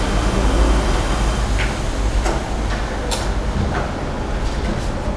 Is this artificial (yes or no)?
no